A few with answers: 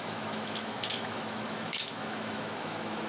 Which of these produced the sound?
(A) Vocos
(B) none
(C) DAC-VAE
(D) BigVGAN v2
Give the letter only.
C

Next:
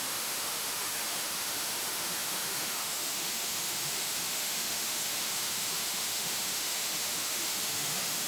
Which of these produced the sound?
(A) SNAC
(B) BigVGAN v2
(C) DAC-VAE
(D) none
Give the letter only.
C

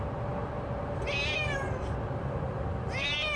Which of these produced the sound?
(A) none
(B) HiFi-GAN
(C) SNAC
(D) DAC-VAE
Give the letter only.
A